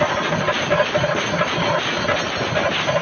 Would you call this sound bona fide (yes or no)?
yes